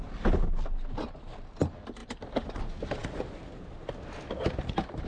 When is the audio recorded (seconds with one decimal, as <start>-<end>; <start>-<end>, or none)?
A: 0.0-5.1